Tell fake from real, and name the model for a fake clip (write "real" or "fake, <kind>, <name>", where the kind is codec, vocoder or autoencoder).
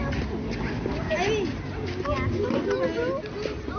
real